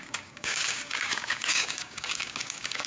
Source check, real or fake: fake